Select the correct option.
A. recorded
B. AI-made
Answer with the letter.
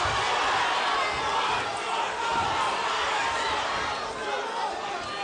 A